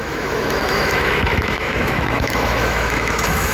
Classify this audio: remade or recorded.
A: remade